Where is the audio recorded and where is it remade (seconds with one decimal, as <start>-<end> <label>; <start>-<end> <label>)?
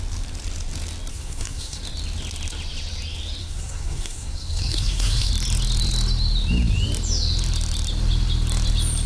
0.0-1.1 recorded; 1.1-1.8 remade; 1.8-3.4 recorded; 3.4-5.3 remade; 5.3-9.1 recorded